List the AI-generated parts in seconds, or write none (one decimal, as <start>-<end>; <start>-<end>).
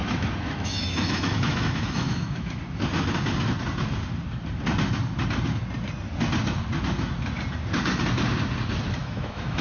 0.0-2.6; 9.0-9.6